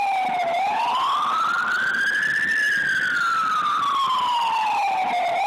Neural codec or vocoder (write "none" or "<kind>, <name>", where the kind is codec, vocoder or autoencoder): none